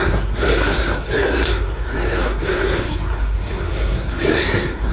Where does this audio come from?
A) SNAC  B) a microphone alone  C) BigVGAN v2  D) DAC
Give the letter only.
A